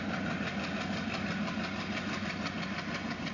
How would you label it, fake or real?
real